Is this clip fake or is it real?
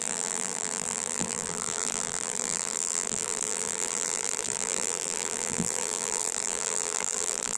fake